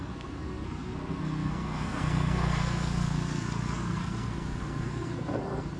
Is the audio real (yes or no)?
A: no